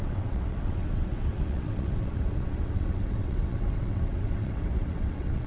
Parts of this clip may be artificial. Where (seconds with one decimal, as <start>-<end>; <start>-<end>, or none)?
0.0-5.5